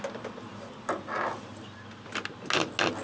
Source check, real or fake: real